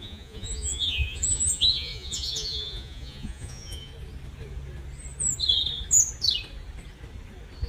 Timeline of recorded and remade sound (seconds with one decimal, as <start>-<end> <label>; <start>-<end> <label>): 0.0-3.9 remade; 3.9-7.7 recorded